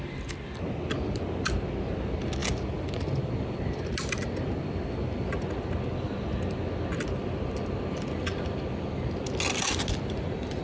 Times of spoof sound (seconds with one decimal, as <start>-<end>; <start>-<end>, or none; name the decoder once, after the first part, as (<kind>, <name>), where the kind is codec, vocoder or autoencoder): none